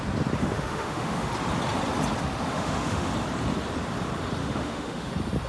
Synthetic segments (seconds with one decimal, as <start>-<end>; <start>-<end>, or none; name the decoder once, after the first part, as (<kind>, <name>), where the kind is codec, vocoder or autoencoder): 0.4-1.3 (autoencoder, DAC-VAE); 2.5-3.1; 4.4-5.1